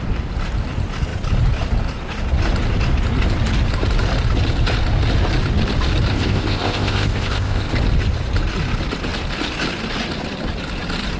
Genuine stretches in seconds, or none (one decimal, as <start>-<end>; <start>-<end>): 0.0-6.1; 7.7-11.2